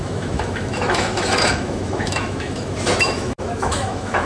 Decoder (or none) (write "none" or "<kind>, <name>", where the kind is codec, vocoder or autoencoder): autoencoder, DAC-VAE